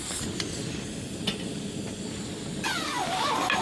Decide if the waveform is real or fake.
real